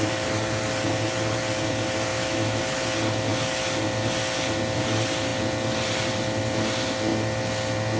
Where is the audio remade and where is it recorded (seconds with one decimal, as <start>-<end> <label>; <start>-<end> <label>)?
0.0-2.1 recorded; 2.1-2.6 remade; 2.6-8.0 recorded